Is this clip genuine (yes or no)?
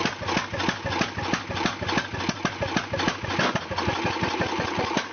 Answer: yes